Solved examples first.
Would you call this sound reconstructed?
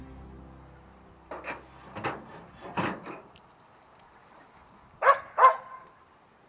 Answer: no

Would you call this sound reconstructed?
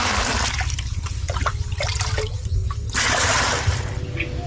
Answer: no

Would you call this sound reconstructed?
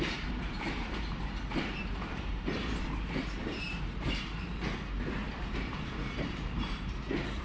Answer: yes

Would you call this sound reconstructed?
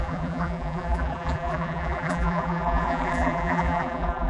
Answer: yes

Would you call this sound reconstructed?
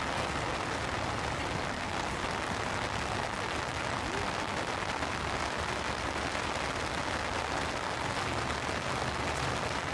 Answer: no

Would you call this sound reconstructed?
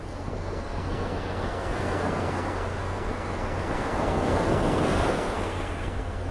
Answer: yes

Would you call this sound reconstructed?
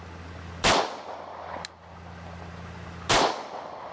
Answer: no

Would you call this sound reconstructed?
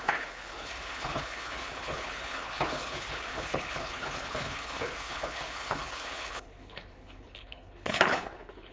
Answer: yes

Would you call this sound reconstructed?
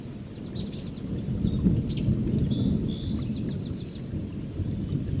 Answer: no